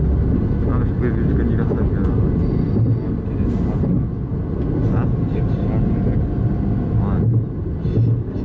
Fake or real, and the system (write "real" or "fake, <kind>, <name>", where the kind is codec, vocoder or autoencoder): real